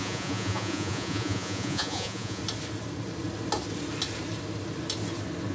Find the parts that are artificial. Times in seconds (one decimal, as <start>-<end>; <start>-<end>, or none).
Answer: 0.0-2.4